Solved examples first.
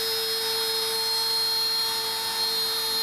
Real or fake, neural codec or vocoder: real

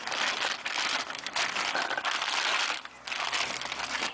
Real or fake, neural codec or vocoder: real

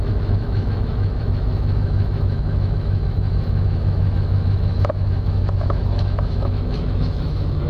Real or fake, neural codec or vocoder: fake, autoencoder, DAC-VAE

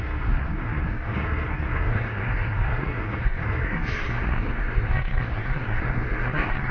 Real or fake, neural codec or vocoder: fake, codec, SNAC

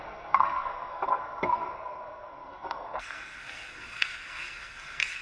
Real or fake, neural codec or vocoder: fake, codec, SNAC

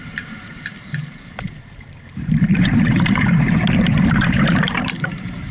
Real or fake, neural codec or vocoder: fake, vocoder, BigVGAN v2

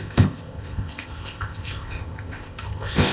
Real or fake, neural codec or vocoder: fake, codec, ZipCodec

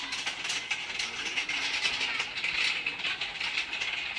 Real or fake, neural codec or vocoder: real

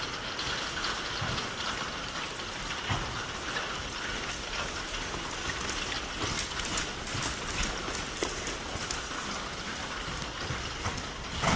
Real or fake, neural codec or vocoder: real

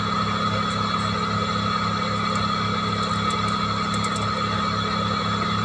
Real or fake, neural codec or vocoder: real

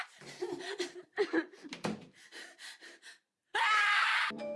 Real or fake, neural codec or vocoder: fake, vocoder, BigVGAN v2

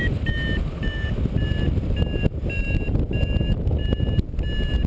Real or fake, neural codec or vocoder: real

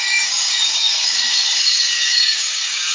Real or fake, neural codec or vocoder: fake, codec, DAC